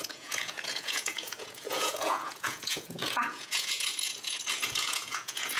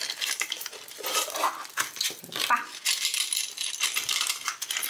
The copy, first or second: first